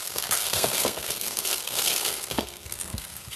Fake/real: fake